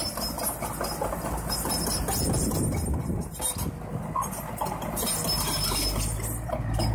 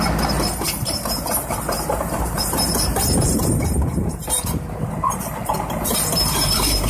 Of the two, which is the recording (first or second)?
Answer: first